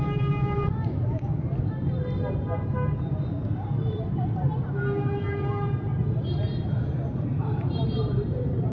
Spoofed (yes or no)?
yes